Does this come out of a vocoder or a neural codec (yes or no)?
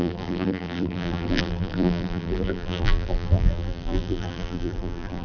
yes